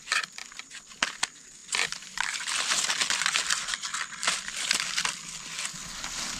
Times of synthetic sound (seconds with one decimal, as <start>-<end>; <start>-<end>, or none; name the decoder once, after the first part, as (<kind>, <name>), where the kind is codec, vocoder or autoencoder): 1.6-2.4 (vocoder, BigVGAN v2); 3.0-4.7